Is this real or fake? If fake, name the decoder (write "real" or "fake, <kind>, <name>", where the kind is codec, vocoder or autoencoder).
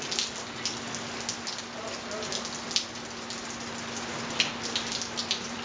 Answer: real